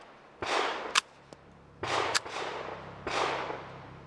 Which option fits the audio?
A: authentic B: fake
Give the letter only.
A